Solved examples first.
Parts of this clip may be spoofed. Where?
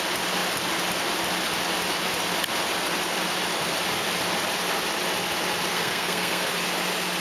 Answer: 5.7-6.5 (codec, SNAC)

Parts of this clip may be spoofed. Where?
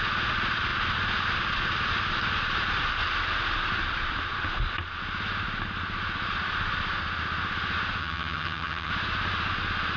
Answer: 8.0-8.9 (vocoder, HiFi-GAN)